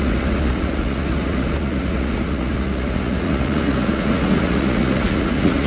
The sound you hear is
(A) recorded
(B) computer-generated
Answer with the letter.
B